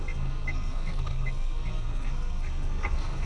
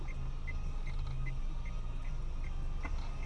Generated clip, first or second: first